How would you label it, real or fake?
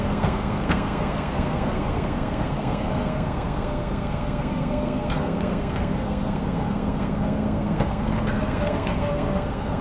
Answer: fake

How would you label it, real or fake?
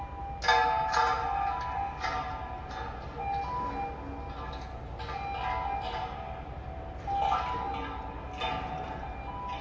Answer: real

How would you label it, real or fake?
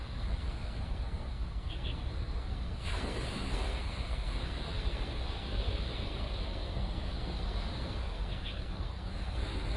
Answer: fake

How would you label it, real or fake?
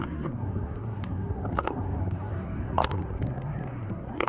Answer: fake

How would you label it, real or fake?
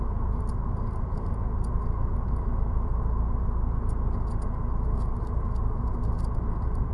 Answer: real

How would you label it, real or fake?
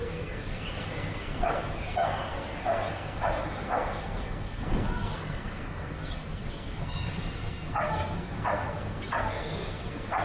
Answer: fake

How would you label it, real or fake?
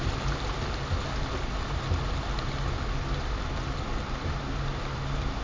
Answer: real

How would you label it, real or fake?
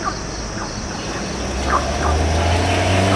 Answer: real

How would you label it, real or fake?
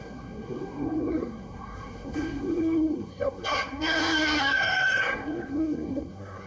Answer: fake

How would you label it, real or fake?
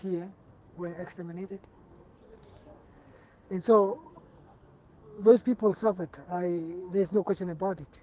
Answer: fake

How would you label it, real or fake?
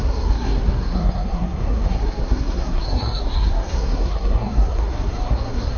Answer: fake